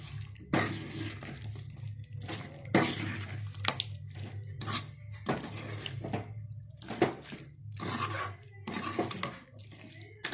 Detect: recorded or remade recorded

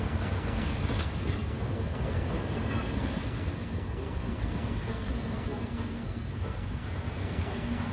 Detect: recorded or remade remade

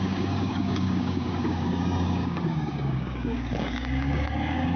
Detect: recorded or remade remade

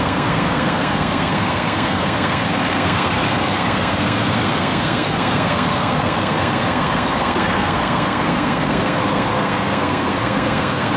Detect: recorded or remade remade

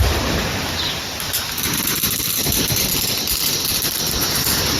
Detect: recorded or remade remade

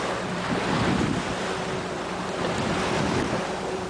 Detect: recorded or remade remade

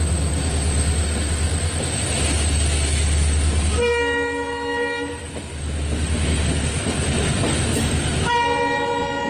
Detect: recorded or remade recorded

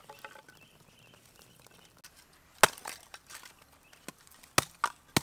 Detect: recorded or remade recorded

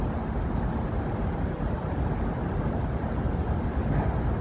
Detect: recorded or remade recorded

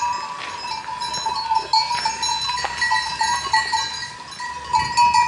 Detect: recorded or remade recorded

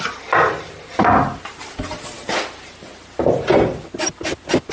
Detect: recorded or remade recorded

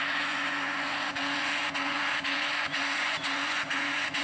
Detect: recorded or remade remade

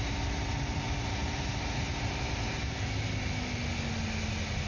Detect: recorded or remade recorded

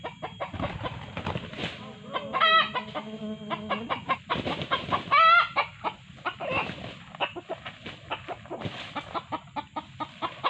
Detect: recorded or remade recorded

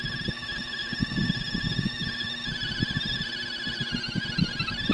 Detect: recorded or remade recorded